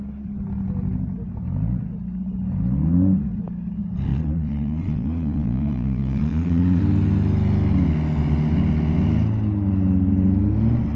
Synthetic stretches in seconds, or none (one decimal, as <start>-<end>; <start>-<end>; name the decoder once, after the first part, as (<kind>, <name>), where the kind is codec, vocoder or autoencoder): 4.1-6.8 (vocoder, Vocos)